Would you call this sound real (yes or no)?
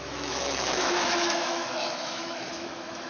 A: no